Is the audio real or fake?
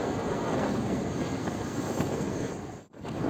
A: fake